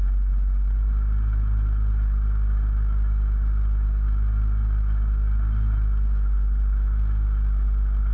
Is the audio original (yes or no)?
yes